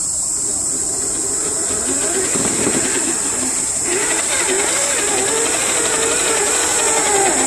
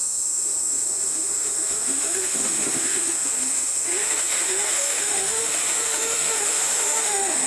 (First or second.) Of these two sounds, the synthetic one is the second